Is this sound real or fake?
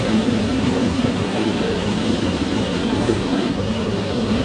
fake